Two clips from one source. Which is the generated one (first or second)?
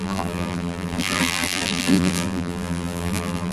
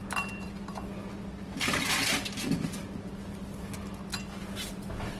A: first